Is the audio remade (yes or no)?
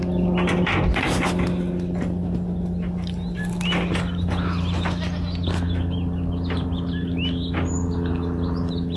no